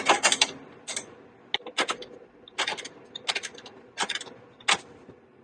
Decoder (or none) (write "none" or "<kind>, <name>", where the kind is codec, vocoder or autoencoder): none